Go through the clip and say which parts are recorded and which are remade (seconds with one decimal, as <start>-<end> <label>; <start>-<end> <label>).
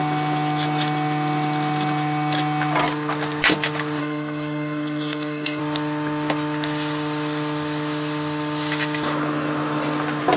0.0-4.0 recorded; 4.0-5.6 remade; 5.6-10.4 recorded